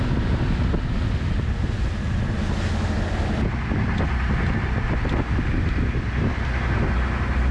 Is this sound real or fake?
real